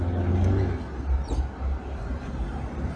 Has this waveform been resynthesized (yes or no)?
no